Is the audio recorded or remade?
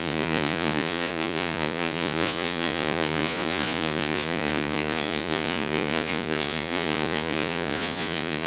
remade